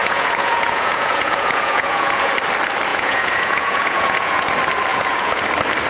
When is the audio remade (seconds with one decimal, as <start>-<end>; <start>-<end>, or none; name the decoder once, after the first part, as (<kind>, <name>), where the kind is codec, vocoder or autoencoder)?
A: 0.0-2.3 (vocoder, Vocos); 2.9-4.5; 4.9-5.4